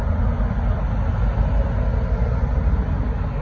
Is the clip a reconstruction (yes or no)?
no